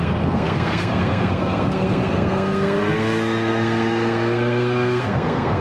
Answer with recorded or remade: remade